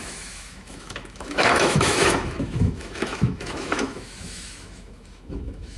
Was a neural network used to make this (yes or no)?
yes